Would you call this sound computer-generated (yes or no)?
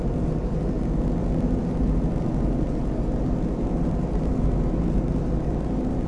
yes